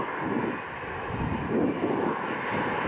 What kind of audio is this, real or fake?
real